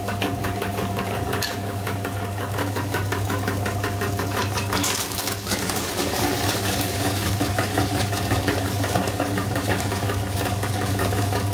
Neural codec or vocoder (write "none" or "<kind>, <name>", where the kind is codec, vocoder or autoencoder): codec, DAC